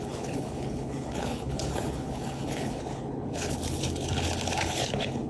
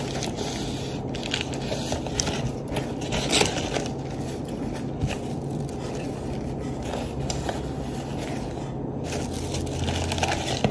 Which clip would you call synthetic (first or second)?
first